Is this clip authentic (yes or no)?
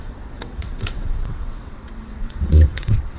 no